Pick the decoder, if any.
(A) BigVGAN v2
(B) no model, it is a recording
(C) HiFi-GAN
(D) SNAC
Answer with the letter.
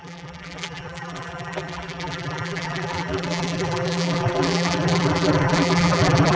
A